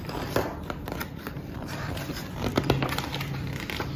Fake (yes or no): yes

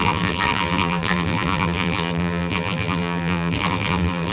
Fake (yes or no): yes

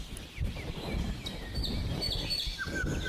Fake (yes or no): no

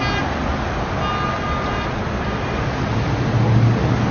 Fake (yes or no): no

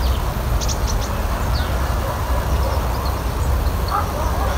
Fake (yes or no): no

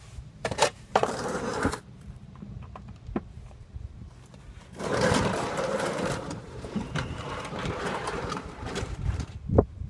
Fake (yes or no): yes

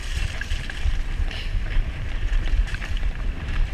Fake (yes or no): yes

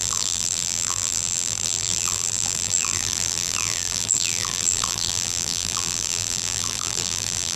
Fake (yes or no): yes